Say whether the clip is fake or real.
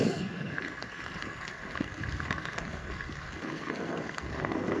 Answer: fake